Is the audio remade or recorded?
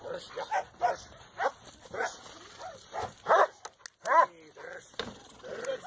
recorded